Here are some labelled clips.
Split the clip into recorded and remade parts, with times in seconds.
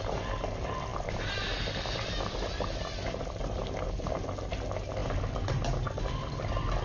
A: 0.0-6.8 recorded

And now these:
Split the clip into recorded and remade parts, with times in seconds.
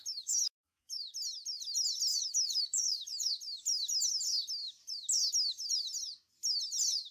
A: 0.0-1.0 remade; 1.0-2.1 recorded; 2.1-3.3 remade; 3.3-7.1 recorded